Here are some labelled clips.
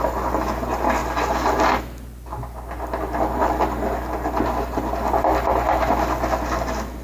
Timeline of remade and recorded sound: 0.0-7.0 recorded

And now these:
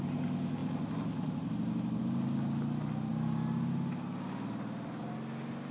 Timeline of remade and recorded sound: 0.0-0.6 recorded; 0.6-2.0 remade; 2.0-5.7 recorded

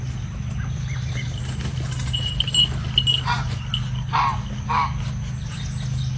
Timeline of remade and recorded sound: 0.0-0.9 recorded; 0.9-1.5 remade; 1.5-6.2 recorded

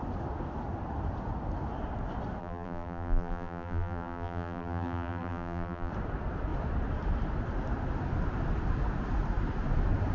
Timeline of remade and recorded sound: 0.0-2.4 recorded; 2.4-5.9 remade; 5.9-10.1 recorded

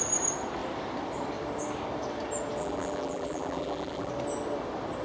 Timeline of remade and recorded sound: 0.0-2.6 recorded; 2.6-4.1 remade; 4.1-5.0 recorded

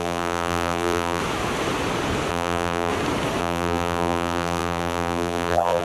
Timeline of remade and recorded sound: 0.0-1.2 remade; 1.2-2.3 recorded; 2.3-2.9 remade; 2.9-3.4 recorded; 3.4-5.8 remade

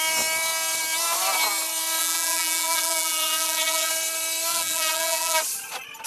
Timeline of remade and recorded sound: 0.0-2.0 recorded; 2.0-3.9 remade; 3.9-4.5 recorded; 4.5-5.4 remade; 5.4-6.1 recorded